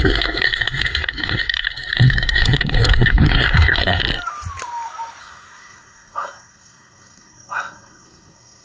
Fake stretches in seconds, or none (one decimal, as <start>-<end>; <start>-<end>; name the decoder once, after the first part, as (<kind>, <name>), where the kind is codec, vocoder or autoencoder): 0.0-4.0 (codec, SNAC); 5.2-8.6